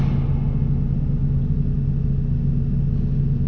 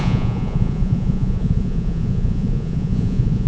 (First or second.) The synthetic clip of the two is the second